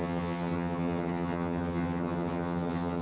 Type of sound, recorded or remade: remade